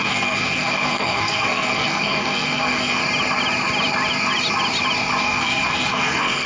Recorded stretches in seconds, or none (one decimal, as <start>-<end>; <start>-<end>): 3.0-5.2